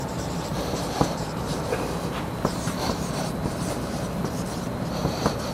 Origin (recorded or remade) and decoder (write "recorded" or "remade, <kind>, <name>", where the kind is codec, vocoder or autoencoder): remade, vocoder, BigVGAN v2